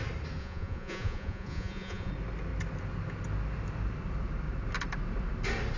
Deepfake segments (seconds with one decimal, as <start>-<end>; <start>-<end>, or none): 0.4-2.1